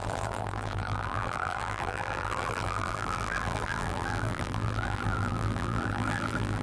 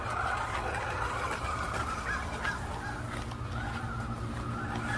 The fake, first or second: first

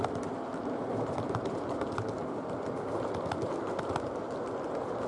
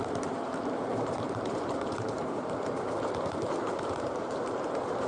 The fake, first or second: second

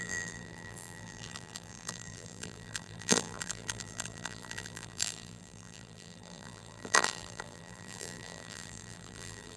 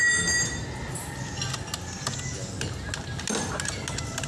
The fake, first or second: first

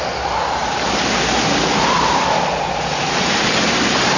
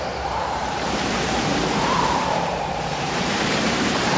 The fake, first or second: second